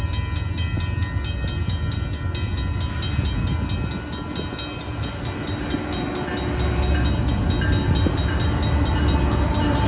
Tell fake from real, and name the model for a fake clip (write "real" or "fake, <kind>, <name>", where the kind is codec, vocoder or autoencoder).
real